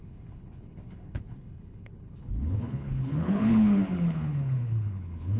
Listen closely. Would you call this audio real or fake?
fake